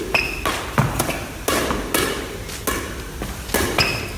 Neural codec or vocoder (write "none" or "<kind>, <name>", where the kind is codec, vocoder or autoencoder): none